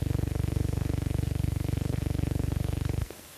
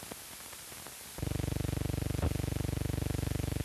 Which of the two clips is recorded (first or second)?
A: second